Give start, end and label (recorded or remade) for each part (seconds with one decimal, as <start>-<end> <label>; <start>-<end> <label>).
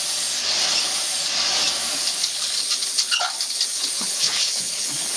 0.0-2.0 recorded; 2.0-5.2 remade